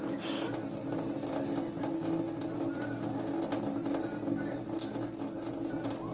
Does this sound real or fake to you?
real